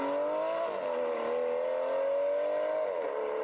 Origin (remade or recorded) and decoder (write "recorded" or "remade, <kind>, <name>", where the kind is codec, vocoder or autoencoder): recorded